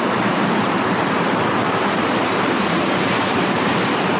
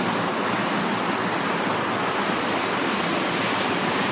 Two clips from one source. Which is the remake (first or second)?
first